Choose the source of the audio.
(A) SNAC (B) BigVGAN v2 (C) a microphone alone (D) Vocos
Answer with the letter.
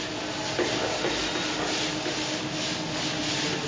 C